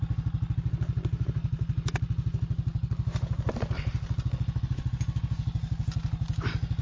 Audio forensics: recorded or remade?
recorded